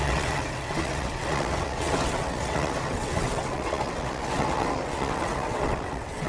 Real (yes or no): no